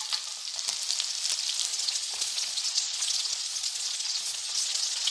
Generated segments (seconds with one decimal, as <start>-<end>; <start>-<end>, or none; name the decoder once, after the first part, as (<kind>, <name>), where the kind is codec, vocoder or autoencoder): 1.7-5.1 (vocoder, Vocos)